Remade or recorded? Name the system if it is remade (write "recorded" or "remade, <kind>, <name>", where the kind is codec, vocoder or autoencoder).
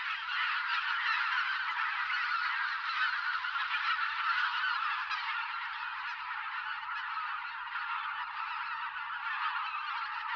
recorded